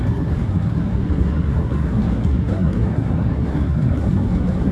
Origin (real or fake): fake